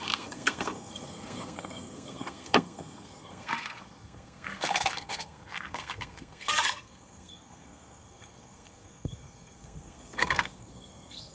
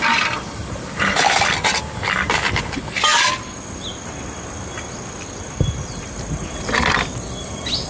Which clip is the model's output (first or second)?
first